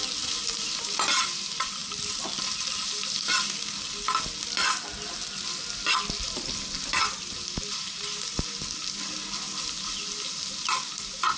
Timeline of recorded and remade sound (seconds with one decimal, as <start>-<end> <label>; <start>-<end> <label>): 0.0-0.4 recorded; 0.4-1.1 remade; 1.1-11.4 recorded